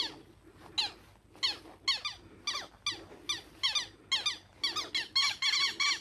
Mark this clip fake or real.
real